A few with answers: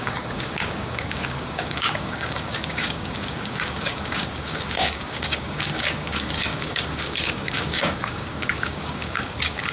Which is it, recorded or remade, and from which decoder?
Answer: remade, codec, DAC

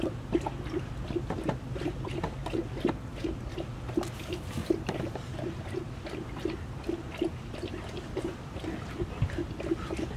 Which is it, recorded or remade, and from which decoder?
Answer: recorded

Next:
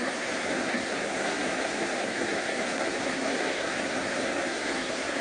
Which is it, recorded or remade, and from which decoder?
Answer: remade, codec, SNAC